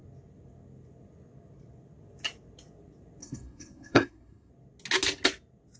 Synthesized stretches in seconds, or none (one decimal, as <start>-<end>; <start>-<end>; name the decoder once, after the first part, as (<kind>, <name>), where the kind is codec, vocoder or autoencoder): 3.2-4.5 (codec, SNAC)